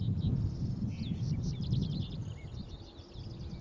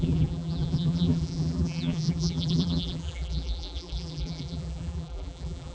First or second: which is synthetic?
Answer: second